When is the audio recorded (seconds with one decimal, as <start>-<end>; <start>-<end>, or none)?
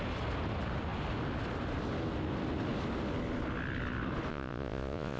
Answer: 0.0-4.3